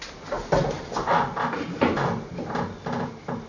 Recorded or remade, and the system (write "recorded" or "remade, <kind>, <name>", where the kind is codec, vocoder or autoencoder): recorded